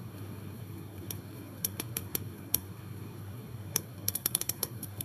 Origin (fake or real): fake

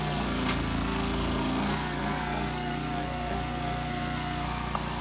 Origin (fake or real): fake